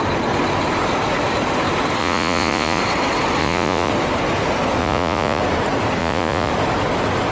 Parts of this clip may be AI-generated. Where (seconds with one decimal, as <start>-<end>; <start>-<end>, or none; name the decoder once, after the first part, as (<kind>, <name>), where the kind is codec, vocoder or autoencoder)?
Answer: 2.0-2.8 (vocoder, Vocos); 3.4-3.9; 4.8-5.4; 6.0-6.5